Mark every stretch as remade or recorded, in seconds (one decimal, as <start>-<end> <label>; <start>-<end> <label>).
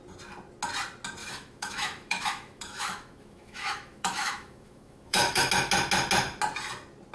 0.0-1.2 recorded; 1.2-5.5 remade; 5.5-7.1 recorded